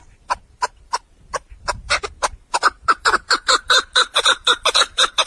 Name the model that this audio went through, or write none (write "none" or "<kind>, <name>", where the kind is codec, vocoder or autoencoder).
vocoder, BigVGAN v2